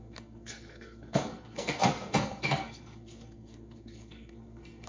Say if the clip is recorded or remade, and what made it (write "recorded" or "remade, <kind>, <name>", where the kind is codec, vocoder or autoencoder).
remade, codec, SNAC